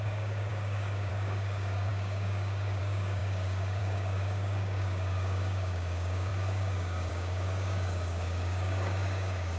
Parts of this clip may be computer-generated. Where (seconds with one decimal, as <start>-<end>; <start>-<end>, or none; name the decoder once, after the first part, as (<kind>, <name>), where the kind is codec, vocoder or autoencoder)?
0.0-9.6 (codec, DAC)